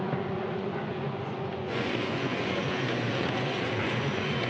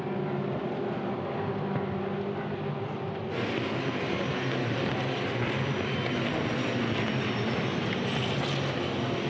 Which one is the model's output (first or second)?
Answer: first